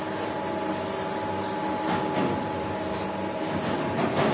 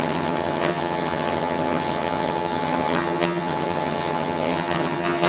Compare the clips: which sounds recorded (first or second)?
first